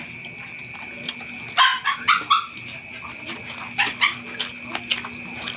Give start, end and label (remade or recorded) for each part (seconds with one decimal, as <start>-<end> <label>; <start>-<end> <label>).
0.0-5.6 recorded